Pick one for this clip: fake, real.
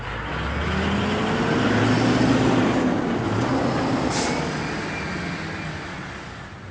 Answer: real